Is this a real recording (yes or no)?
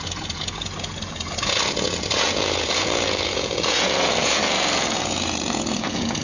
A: no